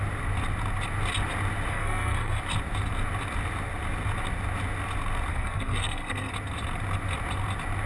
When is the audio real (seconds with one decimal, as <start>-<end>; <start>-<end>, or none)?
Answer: 0.0-1.7; 2.4-5.3; 6.3-7.9